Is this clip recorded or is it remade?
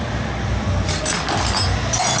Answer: recorded